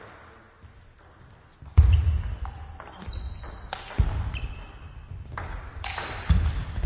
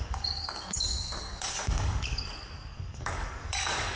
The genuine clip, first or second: first